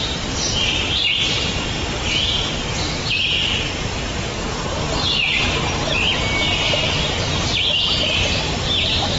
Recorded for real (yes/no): yes